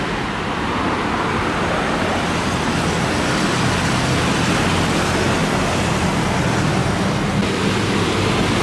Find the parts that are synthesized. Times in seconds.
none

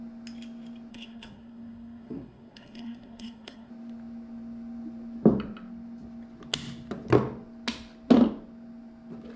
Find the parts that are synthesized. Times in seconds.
0.9-3.7

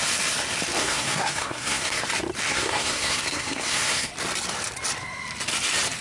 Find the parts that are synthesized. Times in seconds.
0.8-2.0; 2.5-4.1